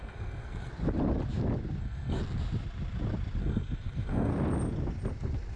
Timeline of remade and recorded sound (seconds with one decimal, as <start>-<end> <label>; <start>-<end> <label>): 0.0-0.7 remade; 0.7-1.8 recorded; 1.8-2.2 remade; 2.2-3.4 recorded; 3.4-4.3 remade; 4.3-5.6 recorded

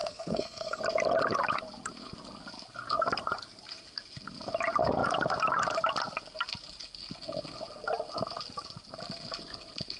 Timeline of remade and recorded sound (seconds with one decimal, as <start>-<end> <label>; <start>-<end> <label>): 0.0-0.8 remade; 0.8-10.0 recorded

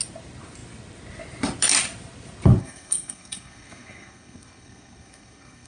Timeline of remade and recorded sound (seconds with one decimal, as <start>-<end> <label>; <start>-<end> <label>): 0.0-2.6 recorded; 2.6-5.7 remade

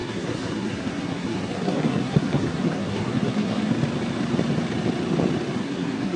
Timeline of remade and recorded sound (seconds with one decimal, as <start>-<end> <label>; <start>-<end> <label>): 0.0-3.7 remade; 3.7-5.6 recorded; 5.6-6.2 remade

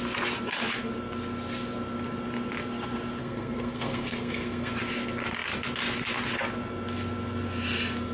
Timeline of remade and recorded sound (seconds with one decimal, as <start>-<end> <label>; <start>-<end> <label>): 0.0-3.2 recorded; 3.2-4.7 remade; 4.7-8.1 recorded

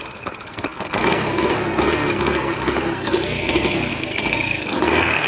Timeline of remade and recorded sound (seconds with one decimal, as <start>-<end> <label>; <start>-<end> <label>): 0.0-5.3 remade

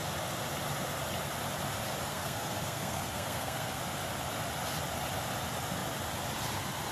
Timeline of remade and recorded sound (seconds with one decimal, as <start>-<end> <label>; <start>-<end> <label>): 0.0-2.1 recorded; 2.1-3.8 remade; 3.8-6.9 recorded

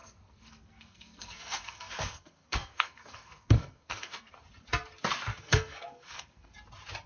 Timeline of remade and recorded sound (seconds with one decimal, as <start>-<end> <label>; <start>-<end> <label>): 0.0-4.3 remade; 4.3-5.3 recorded; 5.3-6.5 remade; 6.5-7.1 recorded